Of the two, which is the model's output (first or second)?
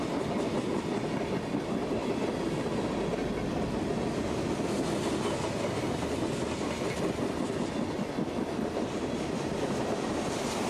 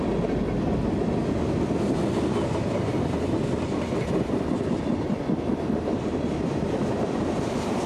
second